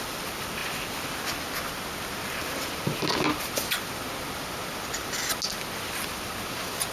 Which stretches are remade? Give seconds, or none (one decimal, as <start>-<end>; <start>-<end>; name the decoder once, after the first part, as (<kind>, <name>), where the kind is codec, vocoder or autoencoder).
none